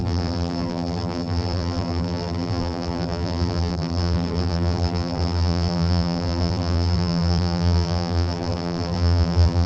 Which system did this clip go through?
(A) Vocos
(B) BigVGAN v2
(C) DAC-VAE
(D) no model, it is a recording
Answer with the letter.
B